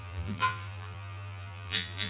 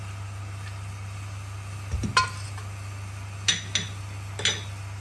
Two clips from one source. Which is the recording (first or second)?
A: second